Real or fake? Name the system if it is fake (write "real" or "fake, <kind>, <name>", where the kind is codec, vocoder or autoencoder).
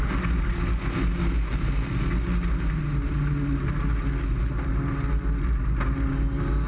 real